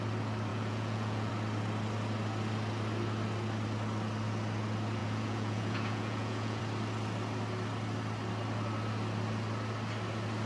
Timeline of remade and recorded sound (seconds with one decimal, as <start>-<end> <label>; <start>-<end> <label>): 0.0-0.5 recorded; 0.5-1.3 remade; 1.3-5.0 recorded; 5.0-6.6 remade; 6.6-10.5 recorded